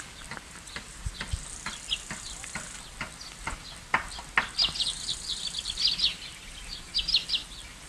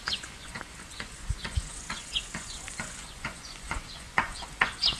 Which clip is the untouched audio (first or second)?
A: first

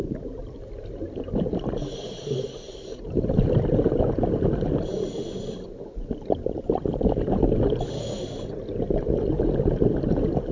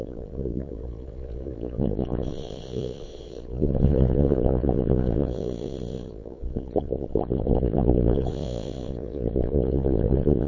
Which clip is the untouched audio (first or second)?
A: first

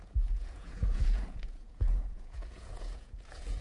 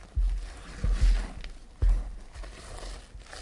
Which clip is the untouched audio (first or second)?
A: second